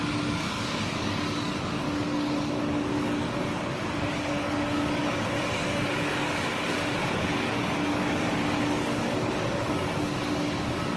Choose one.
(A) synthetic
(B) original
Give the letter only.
A